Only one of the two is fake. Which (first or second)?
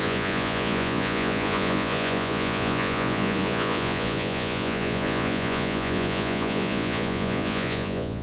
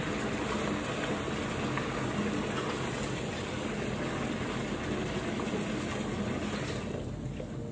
first